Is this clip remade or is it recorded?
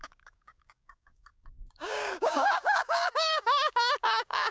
remade